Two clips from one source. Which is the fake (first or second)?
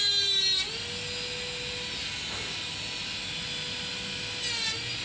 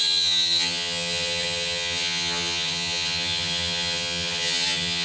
second